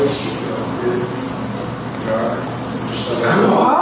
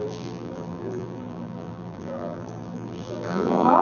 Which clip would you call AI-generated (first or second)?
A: second